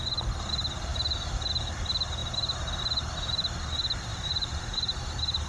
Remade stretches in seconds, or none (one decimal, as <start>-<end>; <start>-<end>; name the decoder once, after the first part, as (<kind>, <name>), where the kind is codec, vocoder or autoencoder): 4.1-5.5 (vocoder, BigVGAN v2)